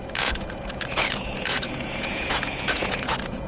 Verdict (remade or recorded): remade